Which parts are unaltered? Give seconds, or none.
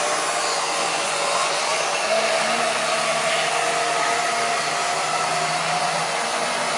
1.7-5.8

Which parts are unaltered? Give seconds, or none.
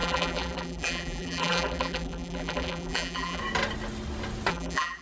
3.4-4.5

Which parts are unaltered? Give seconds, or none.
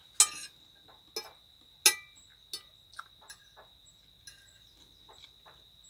0.0-5.9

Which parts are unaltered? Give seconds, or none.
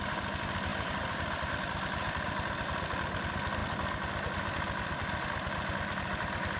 0.0-0.7; 1.5-6.6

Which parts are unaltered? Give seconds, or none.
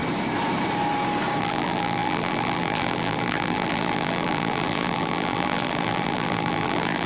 0.0-1.4